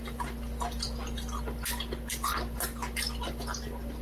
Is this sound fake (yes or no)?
no